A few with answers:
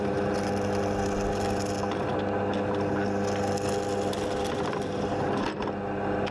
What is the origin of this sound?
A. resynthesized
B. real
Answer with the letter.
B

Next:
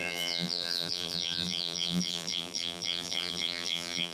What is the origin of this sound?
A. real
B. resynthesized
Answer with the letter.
B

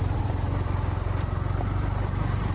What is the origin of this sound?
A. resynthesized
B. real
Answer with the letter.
B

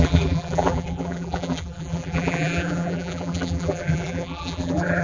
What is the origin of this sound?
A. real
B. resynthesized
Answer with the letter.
B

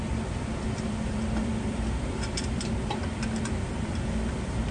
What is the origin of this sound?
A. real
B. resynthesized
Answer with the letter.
B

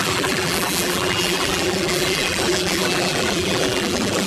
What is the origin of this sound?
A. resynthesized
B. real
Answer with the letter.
A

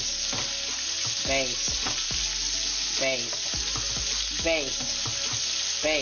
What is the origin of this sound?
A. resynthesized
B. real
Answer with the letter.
B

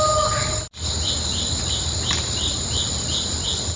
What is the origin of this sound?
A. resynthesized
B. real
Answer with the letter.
B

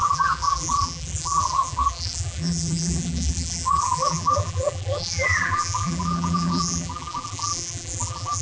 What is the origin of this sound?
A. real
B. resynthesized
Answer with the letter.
B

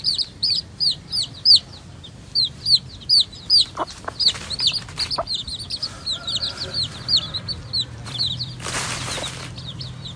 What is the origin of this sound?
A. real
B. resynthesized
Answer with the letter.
B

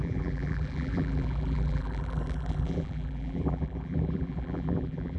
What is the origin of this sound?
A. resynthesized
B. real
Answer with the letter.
A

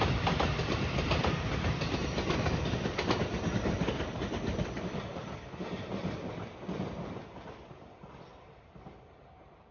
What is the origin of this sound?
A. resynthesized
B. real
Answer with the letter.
A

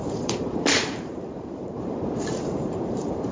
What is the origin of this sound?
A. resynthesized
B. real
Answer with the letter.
A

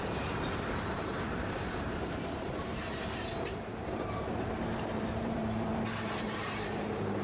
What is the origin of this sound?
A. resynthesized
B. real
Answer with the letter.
A